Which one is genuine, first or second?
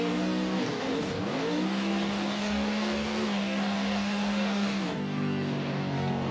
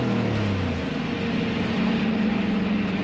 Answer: second